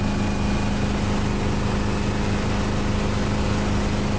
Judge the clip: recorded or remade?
recorded